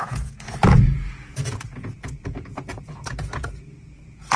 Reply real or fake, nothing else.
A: fake